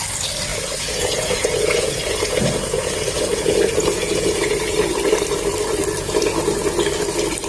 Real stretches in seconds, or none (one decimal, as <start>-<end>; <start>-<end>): 0.0-0.5; 5.0-7.5